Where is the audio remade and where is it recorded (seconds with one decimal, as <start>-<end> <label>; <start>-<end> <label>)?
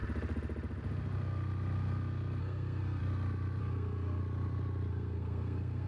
0.0-2.4 recorded; 2.4-3.0 remade; 3.0-3.6 recorded; 3.6-4.2 remade; 4.2-4.9 recorded; 4.9-5.9 remade